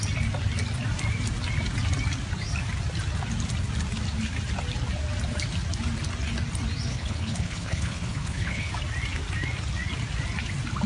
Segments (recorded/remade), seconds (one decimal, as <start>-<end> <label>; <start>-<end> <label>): 0.0-6.9 recorded; 6.9-8.7 remade; 8.7-10.9 recorded